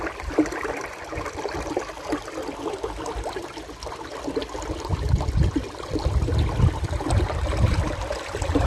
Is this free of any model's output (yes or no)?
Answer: yes